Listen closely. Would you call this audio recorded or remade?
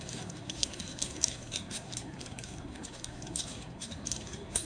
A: remade